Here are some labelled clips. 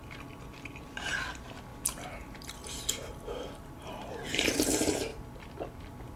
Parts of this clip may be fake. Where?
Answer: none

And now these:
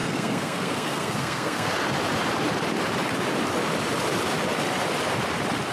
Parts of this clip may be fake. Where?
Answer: 0.0-1.7

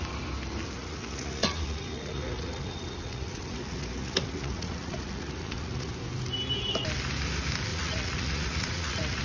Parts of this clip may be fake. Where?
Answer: 0.8-5.9; 7.7-9.2

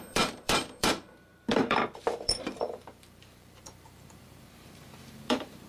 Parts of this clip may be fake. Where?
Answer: 0.0-5.7

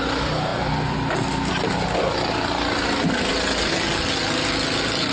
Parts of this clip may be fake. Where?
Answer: none

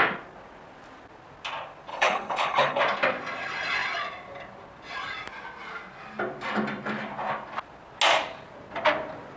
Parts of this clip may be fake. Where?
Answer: 1.9-2.8

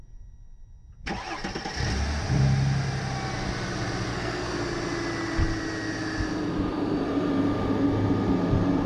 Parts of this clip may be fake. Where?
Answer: 4.1-4.6

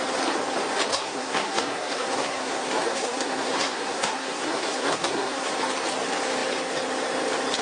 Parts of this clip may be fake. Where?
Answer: 0.9-5.5